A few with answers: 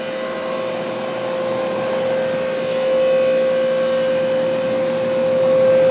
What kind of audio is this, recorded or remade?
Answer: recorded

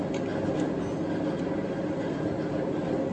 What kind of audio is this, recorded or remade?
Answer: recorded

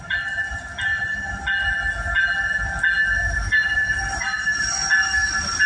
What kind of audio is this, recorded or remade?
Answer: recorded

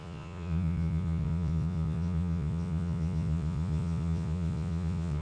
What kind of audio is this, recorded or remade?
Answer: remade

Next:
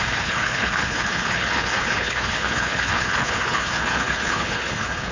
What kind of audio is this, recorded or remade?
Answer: remade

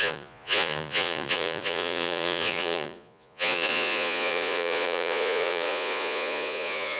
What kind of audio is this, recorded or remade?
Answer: remade